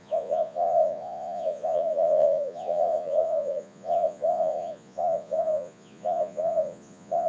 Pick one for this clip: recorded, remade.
remade